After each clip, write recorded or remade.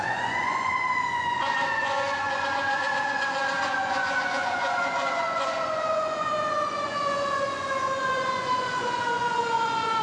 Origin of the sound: remade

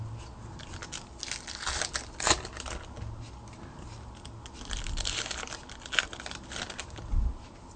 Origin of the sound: recorded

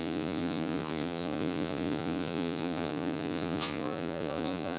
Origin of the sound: remade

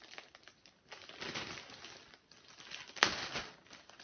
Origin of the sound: recorded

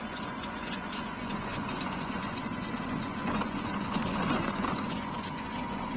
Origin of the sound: remade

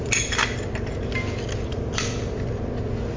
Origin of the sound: recorded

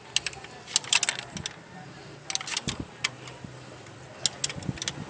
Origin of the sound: recorded